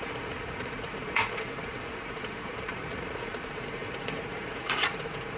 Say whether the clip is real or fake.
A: fake